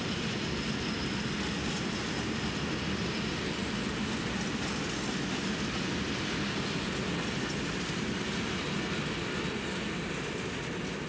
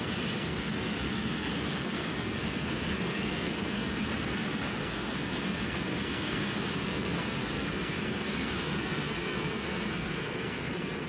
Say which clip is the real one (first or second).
first